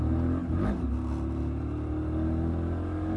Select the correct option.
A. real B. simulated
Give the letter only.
A